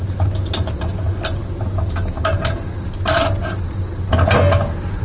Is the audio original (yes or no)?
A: yes